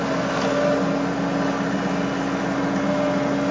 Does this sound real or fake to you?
real